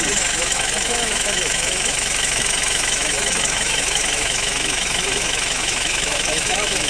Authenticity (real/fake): fake